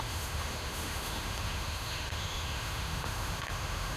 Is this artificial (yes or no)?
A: yes